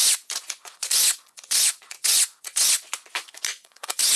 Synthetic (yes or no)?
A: yes